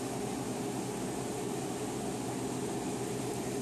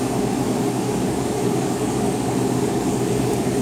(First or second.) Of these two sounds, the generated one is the second